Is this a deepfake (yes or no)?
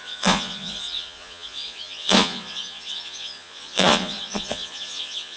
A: yes